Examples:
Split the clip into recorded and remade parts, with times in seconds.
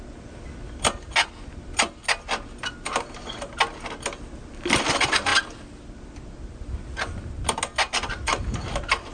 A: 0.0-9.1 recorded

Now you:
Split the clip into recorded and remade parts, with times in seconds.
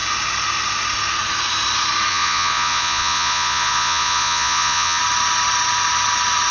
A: 0.0-2.1 recorded; 2.1-5.0 remade; 5.0-6.5 recorded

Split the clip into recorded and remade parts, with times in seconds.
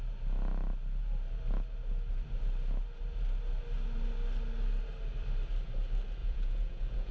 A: 0.0-6.2 recorded; 6.2-7.1 remade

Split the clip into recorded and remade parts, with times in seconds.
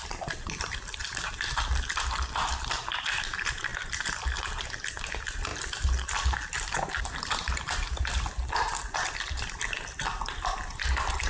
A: 0.0-11.3 recorded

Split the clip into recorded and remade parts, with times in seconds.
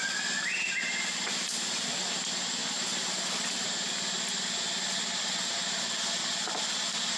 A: 0.0-7.2 recorded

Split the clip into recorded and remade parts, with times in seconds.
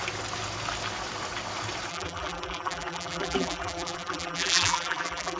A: 0.0-1.9 recorded; 1.9-5.4 remade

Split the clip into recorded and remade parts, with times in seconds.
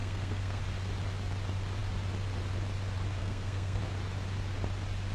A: 0.0-0.6 remade; 0.6-3.2 recorded; 3.2-3.8 remade; 3.8-5.1 recorded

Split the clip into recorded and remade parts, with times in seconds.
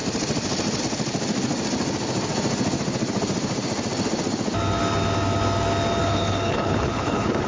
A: 0.0-6.0 recorded; 6.0-7.5 remade